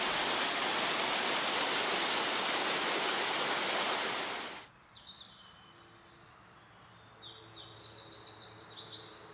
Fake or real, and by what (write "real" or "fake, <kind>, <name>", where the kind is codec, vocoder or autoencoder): real